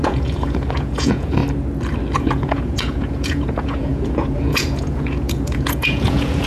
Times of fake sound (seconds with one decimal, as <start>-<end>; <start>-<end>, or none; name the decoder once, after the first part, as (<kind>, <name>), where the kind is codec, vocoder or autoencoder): 0.0-1.4 (vocoder, Vocos); 2.2-6.5